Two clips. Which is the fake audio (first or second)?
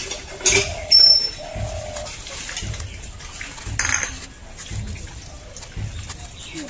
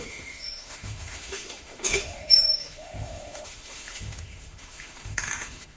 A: second